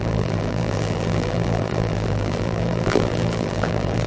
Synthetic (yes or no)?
yes